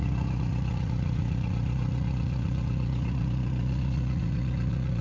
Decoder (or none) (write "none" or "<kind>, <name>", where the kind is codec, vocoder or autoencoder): vocoder, Vocos